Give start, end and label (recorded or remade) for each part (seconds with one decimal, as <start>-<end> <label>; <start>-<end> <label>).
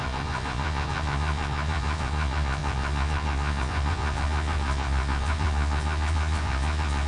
0.0-7.1 remade